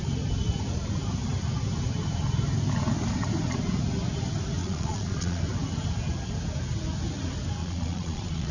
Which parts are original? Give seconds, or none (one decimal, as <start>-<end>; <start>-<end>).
0.0-4.6; 5.4-7.6